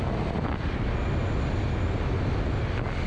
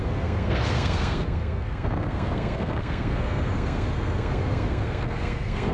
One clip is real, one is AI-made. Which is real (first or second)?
first